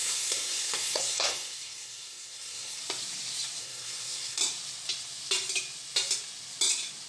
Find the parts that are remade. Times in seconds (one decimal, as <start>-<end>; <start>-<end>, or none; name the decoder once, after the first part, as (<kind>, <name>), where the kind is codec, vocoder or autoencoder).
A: 0.0-2.8 (codec, SNAC); 3.6-4.4